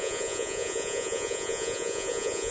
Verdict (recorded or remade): remade